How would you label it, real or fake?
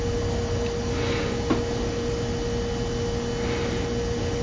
real